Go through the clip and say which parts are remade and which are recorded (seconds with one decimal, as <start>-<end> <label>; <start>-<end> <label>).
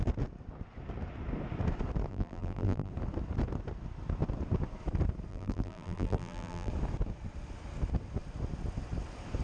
0.0-2.1 recorded; 2.1-2.9 remade; 2.9-5.3 recorded; 5.3-6.7 remade; 6.7-9.4 recorded